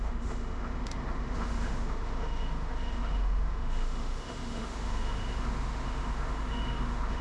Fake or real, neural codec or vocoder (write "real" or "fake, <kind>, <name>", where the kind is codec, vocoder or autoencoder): fake, autoencoder, DAC-VAE